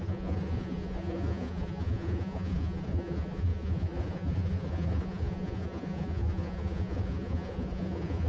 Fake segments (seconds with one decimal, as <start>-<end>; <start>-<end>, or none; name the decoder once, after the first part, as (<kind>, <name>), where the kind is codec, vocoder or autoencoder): 0.0-8.3 (vocoder, Vocos)